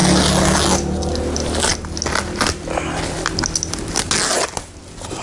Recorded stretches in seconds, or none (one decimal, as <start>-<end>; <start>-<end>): 0.0-5.2